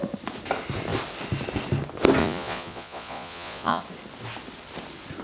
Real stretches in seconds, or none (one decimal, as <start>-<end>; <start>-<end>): 0.0-2.2; 3.8-5.2